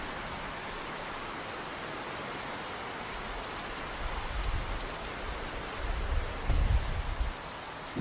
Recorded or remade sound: recorded